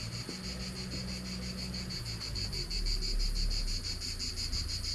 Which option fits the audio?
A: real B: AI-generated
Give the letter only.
A